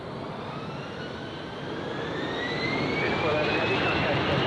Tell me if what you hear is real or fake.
real